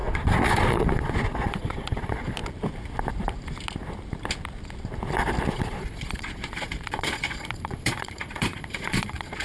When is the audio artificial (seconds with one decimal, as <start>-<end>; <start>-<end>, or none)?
0.0-2.4; 5.5-9.4